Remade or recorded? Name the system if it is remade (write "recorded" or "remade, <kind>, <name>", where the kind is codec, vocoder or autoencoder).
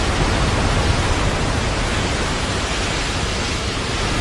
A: recorded